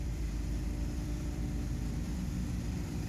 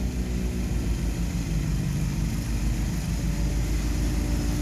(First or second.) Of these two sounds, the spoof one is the first